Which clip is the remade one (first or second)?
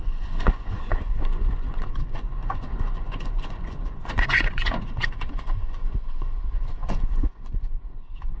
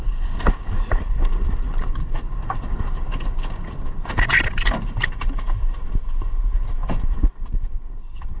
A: first